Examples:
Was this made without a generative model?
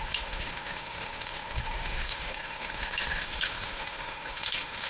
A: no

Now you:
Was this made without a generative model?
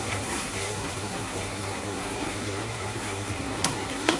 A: no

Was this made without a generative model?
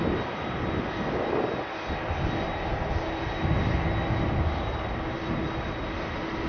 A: yes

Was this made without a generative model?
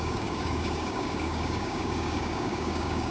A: no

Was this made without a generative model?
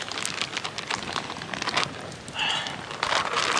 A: yes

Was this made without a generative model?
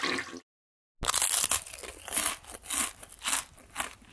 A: yes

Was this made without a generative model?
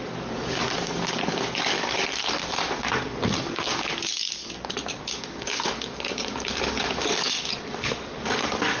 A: no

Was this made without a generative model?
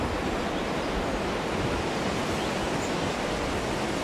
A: yes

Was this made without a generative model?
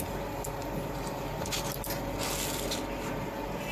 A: yes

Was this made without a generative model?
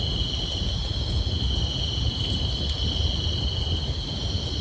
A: yes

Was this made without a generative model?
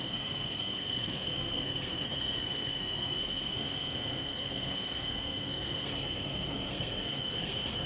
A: no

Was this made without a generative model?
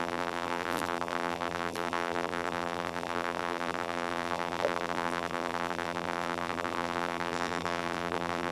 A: no